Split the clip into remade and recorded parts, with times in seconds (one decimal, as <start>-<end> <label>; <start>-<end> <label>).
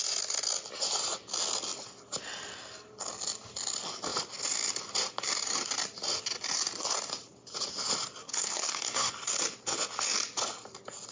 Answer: 0.0-8.2 recorded; 8.2-9.1 remade; 9.1-11.1 recorded